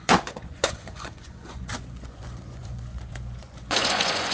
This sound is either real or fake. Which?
fake